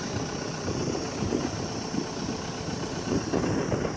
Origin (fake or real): real